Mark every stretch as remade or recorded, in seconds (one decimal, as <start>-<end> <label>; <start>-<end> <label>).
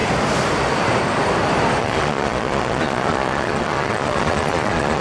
0.0-1.8 recorded; 1.8-5.0 remade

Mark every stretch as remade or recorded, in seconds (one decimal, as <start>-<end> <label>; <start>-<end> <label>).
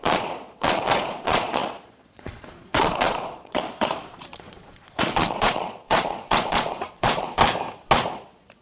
0.0-7.4 remade; 7.4-8.1 recorded; 8.1-8.6 remade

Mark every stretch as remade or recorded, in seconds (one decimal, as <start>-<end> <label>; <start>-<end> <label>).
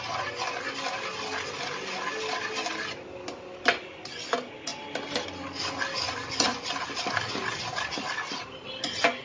0.0-9.2 recorded